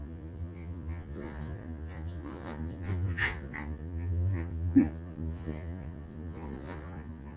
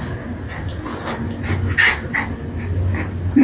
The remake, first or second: first